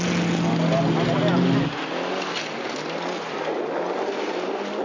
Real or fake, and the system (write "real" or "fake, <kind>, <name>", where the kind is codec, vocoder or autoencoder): real